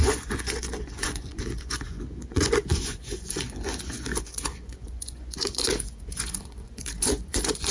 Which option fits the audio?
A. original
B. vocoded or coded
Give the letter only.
B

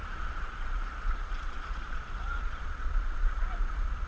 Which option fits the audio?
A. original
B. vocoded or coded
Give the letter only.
B